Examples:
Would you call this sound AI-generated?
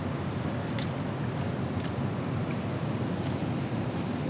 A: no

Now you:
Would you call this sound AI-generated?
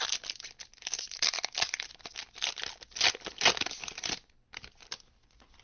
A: no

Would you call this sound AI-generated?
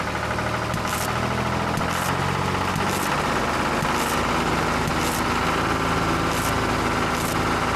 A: no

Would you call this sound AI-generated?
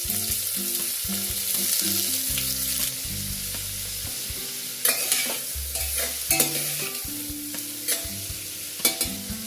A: no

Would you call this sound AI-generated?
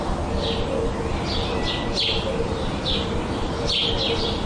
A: no